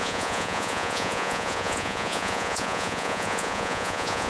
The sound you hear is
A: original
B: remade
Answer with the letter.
B